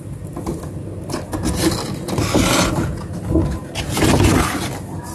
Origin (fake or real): real